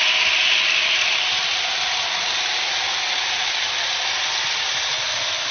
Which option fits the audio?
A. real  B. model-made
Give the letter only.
A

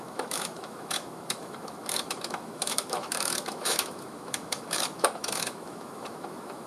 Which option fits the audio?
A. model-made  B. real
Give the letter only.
A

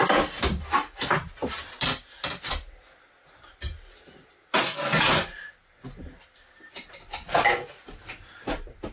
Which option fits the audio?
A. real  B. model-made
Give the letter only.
A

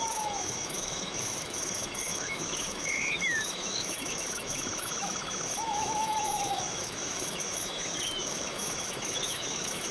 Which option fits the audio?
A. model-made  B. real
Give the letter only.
A